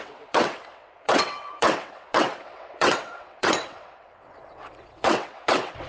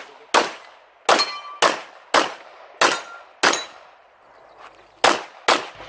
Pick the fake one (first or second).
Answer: first